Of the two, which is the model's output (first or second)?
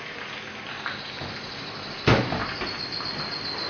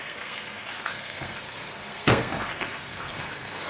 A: second